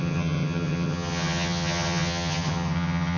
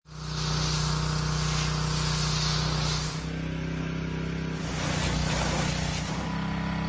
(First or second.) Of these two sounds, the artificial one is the first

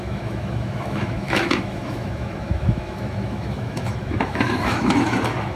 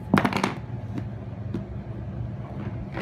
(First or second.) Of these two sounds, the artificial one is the first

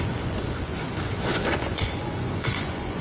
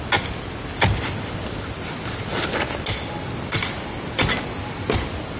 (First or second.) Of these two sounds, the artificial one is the first